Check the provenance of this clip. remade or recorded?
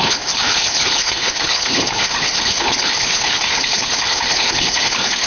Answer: remade